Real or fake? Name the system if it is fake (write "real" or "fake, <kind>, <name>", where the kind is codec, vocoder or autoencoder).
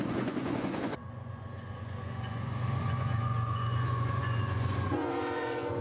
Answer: fake, vocoder, Vocos